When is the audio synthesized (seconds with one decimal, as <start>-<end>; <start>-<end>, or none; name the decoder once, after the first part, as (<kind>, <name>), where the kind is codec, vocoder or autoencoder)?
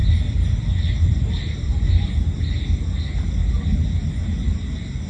none